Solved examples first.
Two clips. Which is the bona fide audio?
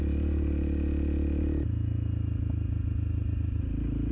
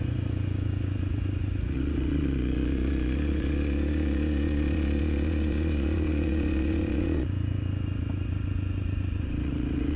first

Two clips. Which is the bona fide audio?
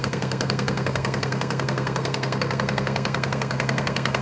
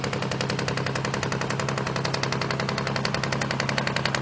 second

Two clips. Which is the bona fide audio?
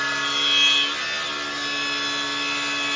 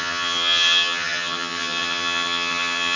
first